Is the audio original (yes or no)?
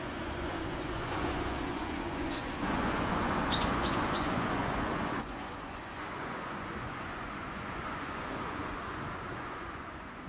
no